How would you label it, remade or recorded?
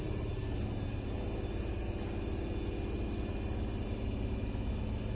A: recorded